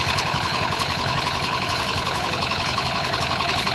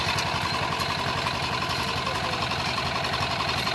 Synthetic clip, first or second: first